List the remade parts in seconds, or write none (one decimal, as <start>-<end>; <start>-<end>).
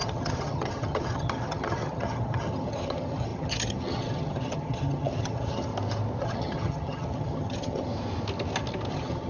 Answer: 0.0-5.7; 6.2-7.9; 8.9-9.3